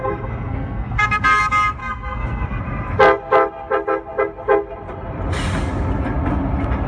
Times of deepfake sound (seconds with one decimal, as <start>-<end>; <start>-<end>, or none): 0.0-1.4; 1.8-2.6